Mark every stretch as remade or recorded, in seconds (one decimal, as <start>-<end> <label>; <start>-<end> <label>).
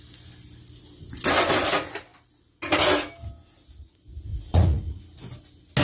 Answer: 0.0-4.3 recorded; 4.3-5.0 remade; 5.0-5.8 recorded